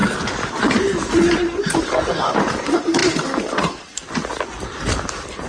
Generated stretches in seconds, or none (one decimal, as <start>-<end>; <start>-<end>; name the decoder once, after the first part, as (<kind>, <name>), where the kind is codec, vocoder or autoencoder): 0.6-4.0 (vocoder, BigVGAN v2); 5.1-5.5